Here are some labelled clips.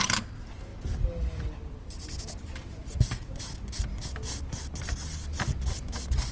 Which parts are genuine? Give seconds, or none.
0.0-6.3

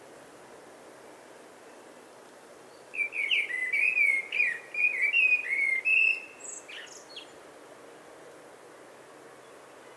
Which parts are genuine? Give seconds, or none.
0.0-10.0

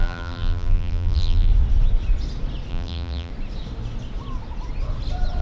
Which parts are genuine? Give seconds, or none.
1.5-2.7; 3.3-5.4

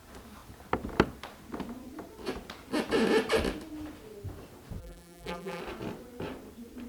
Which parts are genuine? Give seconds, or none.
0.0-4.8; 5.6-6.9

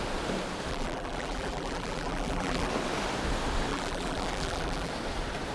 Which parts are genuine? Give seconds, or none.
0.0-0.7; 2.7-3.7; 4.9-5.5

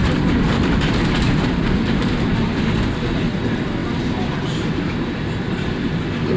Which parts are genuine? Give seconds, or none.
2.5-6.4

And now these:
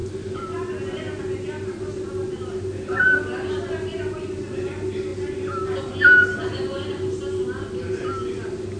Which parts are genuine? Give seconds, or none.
0.0-8.8